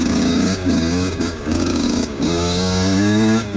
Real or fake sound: fake